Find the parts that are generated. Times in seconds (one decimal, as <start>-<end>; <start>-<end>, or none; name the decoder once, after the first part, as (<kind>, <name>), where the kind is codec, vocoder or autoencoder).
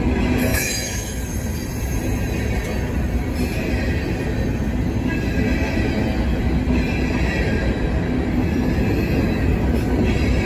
0.5-1.2 (autoencoder, DAC-VAE)